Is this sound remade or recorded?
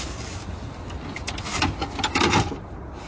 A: recorded